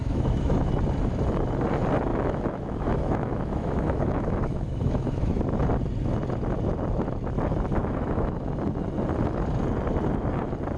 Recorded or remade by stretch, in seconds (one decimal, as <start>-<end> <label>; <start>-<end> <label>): 0.0-0.7 remade; 0.7-2.1 recorded; 2.1-5.4 remade; 5.4-7.8 recorded; 7.8-8.5 remade; 8.5-10.8 recorded